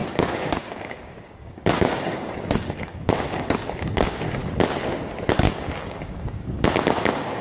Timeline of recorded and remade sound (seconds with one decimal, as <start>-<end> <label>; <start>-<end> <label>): 0.0-4.4 remade; 4.4-5.3 recorded; 5.3-7.4 remade